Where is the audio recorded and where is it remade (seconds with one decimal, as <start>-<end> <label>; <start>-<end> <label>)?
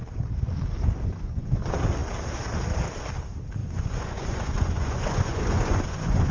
0.0-1.1 recorded; 1.1-1.6 remade; 1.6-3.6 recorded; 3.6-6.3 remade